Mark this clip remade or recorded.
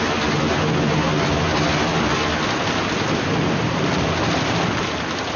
recorded